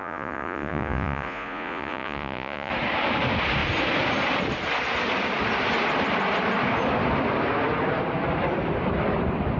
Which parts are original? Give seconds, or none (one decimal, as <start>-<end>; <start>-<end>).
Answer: 2.7-9.6